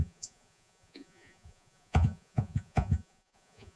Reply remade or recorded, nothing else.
remade